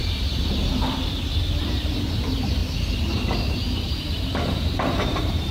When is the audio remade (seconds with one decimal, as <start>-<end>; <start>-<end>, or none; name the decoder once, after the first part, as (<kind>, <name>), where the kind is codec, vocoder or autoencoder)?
1.6-2.6 (vocoder, BigVGAN v2); 3.9-5.5